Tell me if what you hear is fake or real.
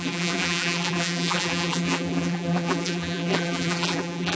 fake